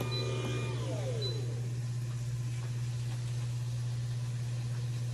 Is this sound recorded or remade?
recorded